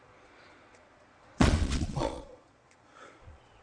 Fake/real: fake